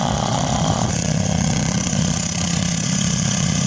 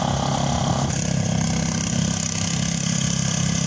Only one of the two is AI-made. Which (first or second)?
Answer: first